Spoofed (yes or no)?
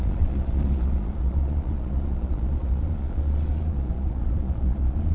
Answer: yes